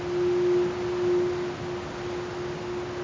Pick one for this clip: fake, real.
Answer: real